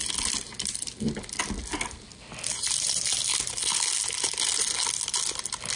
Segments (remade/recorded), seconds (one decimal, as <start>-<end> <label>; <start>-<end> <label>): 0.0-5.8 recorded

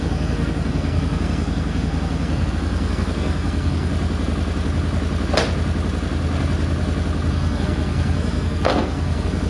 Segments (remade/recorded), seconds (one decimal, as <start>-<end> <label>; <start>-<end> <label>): 0.0-3.9 remade; 3.9-7.3 recorded; 7.3-9.5 remade

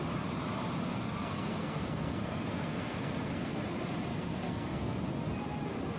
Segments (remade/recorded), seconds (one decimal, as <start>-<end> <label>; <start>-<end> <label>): 0.0-0.9 recorded; 0.9-3.6 remade; 3.6-4.1 recorded; 4.1-5.1 remade; 5.1-6.0 recorded

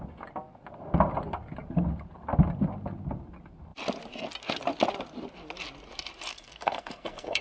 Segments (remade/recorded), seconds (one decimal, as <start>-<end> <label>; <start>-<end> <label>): 0.0-6.3 recorded; 6.3-7.4 remade

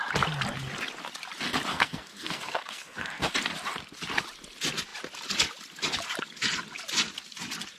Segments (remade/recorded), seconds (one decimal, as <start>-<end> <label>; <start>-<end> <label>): 0.0-1.7 recorded; 1.7-3.3 remade; 3.3-7.8 recorded

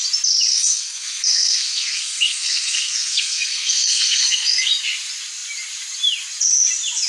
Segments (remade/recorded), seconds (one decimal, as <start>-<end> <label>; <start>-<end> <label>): 0.0-0.5 recorded; 0.5-4.7 remade; 4.7-7.1 recorded

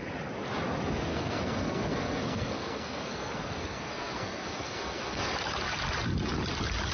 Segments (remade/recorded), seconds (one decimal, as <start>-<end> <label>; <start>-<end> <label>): 0.0-1.1 recorded; 1.1-5.2 remade; 5.2-6.9 recorded